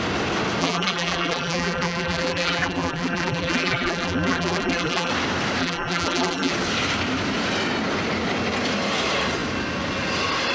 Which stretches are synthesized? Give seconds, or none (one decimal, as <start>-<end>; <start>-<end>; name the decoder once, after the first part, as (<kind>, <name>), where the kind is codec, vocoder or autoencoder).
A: 0.6-5.1 (vocoder, BigVGAN v2); 5.6-6.5